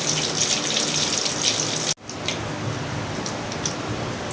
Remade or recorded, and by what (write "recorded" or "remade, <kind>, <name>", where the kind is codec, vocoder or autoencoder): recorded